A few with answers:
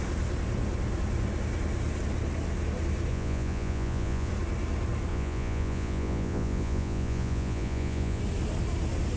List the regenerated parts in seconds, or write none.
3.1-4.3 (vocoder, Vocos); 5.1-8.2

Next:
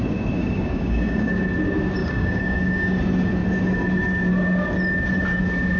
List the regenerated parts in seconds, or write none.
0.4-1.3 (codec, DAC); 2.0-3.0